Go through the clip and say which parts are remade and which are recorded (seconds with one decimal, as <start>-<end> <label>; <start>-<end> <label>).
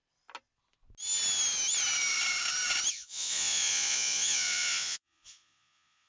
0.0-2.9 recorded; 2.9-6.1 remade